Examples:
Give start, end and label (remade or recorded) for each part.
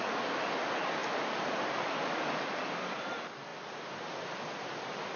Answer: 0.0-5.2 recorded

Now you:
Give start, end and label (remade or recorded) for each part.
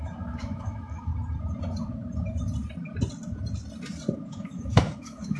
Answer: 0.0-1.1 remade; 1.1-4.3 recorded; 4.3-5.4 remade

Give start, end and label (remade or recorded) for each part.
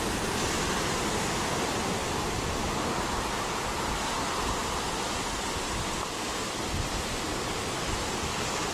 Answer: 0.0-8.7 recorded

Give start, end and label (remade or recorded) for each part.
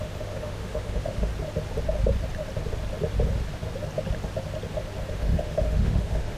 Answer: 0.0-1.3 remade; 1.3-5.1 recorded; 5.1-6.4 remade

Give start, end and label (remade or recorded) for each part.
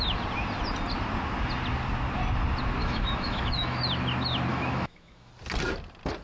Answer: 0.0-2.8 recorded; 2.8-3.8 remade; 3.8-4.5 recorded; 4.5-5.3 remade; 5.3-6.2 recorded